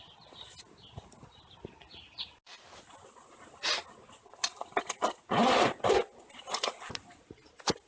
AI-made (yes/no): no